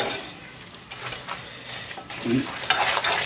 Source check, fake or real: real